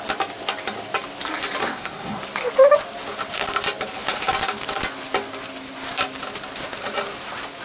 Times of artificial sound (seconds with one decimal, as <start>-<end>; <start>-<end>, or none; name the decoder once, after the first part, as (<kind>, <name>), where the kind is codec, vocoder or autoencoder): 1.6-2.2 (codec, SNAC)